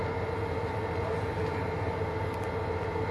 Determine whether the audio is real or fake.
real